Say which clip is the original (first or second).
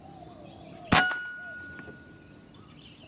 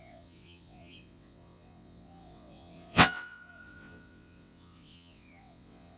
first